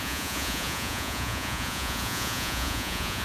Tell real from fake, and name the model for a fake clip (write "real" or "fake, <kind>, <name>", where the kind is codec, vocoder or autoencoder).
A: fake, vocoder, Vocos